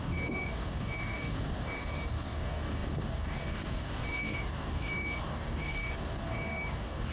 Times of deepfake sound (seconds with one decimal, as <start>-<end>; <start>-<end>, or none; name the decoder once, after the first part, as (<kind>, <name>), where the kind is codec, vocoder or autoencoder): 0.0-7.1 (codec, DAC)